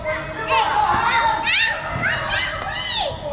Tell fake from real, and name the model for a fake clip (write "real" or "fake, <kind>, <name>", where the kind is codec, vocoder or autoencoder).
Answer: real